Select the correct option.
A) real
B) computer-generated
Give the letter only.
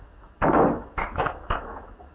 B